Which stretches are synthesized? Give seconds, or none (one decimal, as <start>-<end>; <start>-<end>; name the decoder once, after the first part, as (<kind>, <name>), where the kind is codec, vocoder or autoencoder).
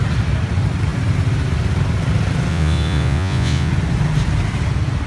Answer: 2.5-3.7 (vocoder, Vocos)